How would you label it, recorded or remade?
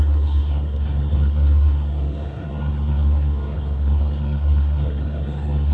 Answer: remade